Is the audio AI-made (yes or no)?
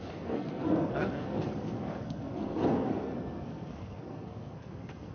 yes